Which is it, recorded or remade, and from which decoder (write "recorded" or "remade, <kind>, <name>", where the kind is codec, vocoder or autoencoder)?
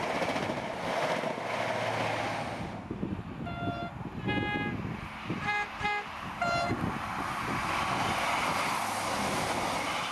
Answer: recorded